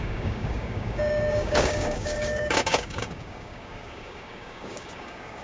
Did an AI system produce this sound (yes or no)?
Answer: yes